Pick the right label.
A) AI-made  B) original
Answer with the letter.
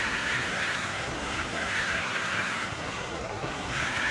A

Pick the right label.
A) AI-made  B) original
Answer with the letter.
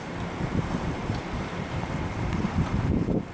A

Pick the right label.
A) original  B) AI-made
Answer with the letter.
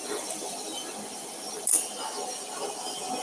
A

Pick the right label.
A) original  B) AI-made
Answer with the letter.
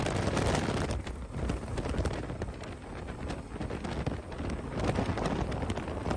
A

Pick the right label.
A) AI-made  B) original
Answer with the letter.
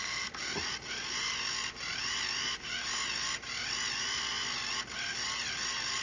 B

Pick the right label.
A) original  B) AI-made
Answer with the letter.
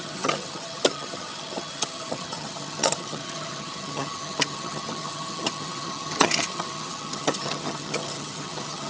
B